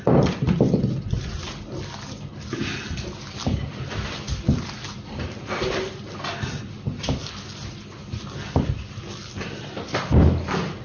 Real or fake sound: real